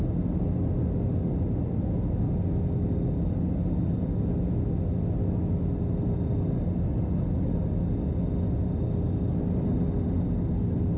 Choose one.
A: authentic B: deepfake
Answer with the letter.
A